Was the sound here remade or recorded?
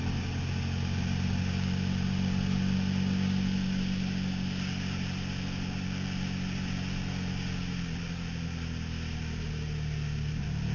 recorded